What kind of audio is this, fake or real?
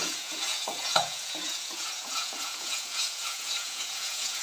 fake